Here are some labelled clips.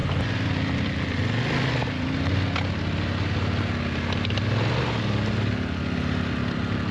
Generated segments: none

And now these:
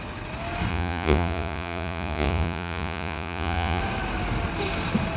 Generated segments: 0.7-3.8 (vocoder, Vocos)

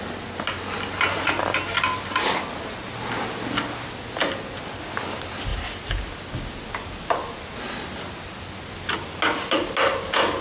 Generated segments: none

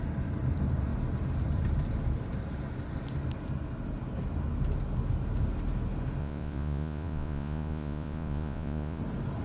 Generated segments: 6.2-9.0 (vocoder, Vocos)

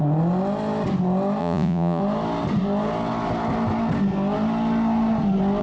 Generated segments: 1.4-2.0 (vocoder, Vocos)

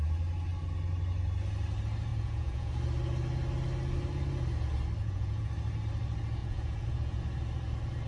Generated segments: 2.1-2.7 (vocoder, Vocos); 5.0-5.5; 6.4-7.2

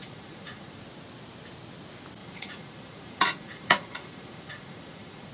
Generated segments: 0.0-0.8 (vocoder, Vocos); 2.2-5.3